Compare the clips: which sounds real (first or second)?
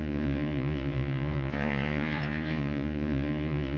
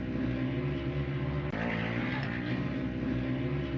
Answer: second